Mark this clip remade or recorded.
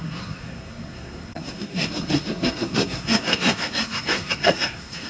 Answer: remade